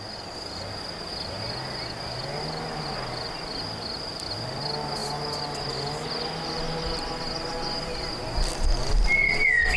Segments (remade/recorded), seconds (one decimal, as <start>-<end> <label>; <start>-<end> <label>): 0.0-9.8 recorded

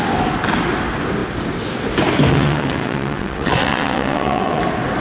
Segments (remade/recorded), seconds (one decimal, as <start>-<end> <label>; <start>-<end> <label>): 0.0-2.3 recorded; 2.3-4.6 remade; 4.6-5.0 recorded